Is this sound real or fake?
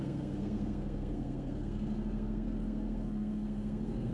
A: fake